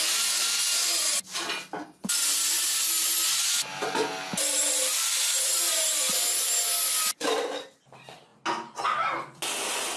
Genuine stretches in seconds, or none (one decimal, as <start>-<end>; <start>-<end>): 0.0-10.0